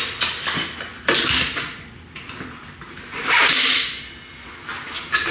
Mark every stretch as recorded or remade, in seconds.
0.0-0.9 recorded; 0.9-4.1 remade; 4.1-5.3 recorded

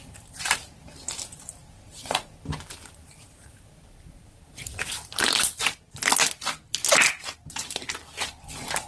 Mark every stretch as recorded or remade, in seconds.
0.0-6.8 remade; 6.8-8.4 recorded; 8.4-8.9 remade

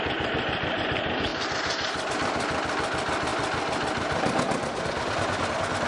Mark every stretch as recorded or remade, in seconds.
0.0-3.3 recorded; 3.3-5.5 remade; 5.5-5.9 recorded

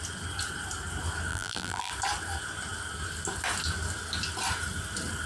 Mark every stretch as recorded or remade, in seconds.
0.0-1.3 recorded; 1.3-1.9 remade; 1.9-5.3 recorded